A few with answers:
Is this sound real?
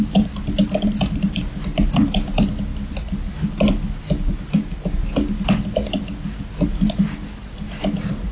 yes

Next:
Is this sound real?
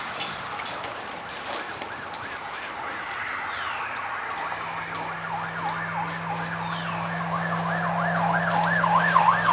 yes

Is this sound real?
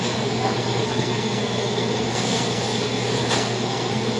no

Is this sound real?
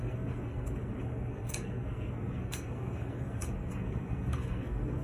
no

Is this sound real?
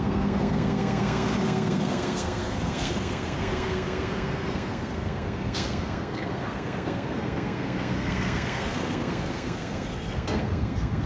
no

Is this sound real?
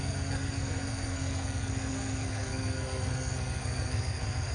no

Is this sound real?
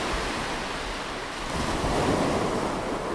yes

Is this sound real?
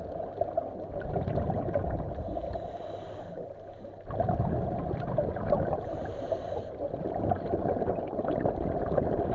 yes